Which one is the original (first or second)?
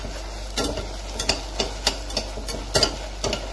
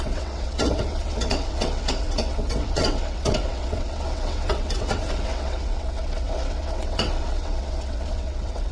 first